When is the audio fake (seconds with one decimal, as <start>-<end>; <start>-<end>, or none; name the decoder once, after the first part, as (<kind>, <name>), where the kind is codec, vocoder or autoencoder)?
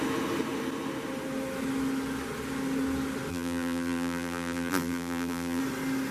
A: 3.3-5.6 (vocoder, BigVGAN v2)